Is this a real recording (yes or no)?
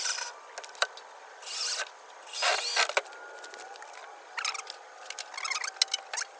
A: yes